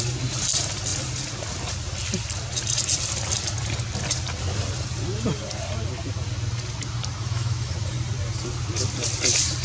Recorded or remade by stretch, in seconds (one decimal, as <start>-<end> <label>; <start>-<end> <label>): 0.0-7.2 recorded; 7.2-7.7 remade; 7.7-9.6 recorded